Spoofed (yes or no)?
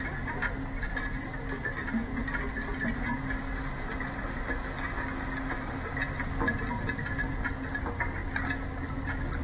no